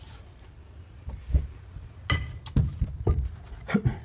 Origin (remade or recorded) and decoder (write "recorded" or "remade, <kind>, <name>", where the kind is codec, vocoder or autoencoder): recorded